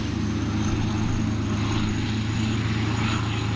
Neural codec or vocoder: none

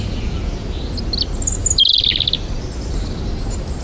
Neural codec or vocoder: none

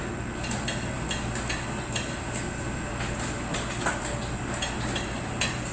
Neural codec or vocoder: none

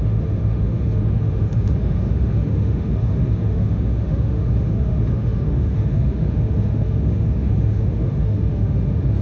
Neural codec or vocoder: autoencoder, DAC-VAE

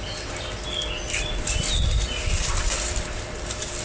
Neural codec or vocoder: none